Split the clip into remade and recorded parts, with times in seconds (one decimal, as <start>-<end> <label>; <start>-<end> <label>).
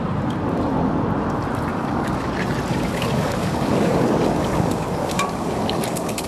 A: 0.0-1.7 recorded; 1.7-2.3 remade; 2.3-2.7 recorded; 2.7-6.3 remade